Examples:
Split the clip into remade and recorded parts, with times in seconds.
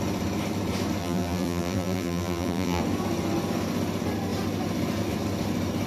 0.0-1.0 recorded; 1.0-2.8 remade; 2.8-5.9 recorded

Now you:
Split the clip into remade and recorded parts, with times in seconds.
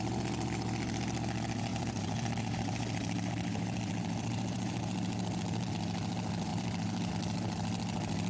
0.0-1.7 recorded; 1.7-5.7 remade; 5.7-6.5 recorded; 6.5-7.1 remade; 7.1-8.3 recorded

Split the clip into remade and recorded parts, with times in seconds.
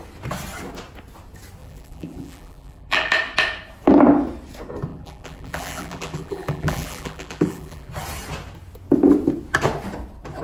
0.0-1.6 recorded; 1.6-3.1 remade; 3.1-4.9 recorded; 4.9-7.9 remade; 7.9-10.4 recorded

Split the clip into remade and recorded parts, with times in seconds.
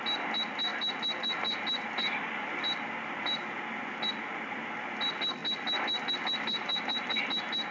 0.0-6.6 recorded; 6.6-7.2 remade; 7.2-7.7 recorded